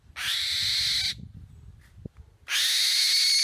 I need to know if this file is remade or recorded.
recorded